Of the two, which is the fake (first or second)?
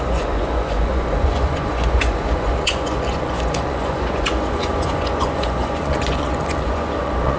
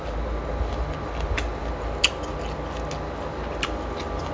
first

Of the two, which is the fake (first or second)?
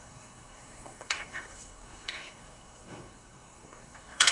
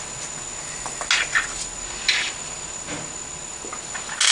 first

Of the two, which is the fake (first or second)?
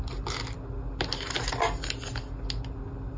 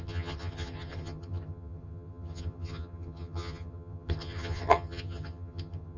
second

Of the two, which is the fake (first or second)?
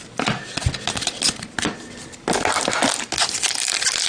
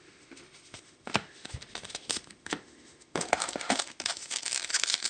second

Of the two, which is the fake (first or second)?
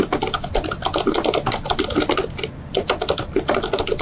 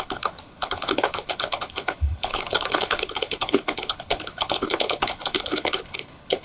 second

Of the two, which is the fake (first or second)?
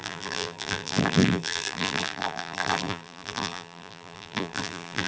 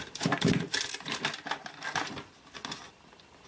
first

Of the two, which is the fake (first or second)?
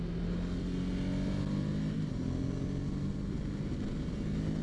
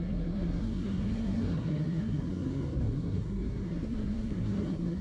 second